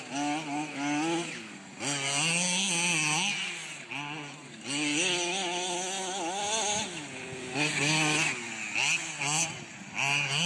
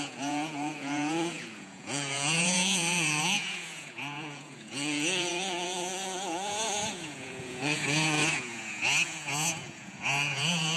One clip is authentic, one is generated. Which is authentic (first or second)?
first